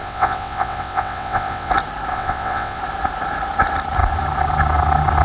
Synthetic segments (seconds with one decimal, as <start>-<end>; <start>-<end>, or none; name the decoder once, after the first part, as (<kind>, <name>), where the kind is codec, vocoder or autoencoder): 0.0-1.7 (vocoder, WaveNeXt); 2.1-2.8